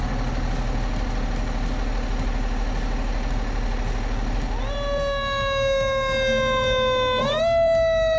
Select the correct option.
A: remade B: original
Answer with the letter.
B